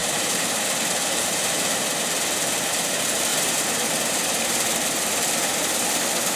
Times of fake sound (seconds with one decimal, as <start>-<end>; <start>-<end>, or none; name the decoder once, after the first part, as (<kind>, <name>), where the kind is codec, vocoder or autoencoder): 0.0-0.7 (vocoder, BigVGAN v2); 1.2-1.9